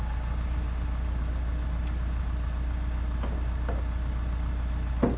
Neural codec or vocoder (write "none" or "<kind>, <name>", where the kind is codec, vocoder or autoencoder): none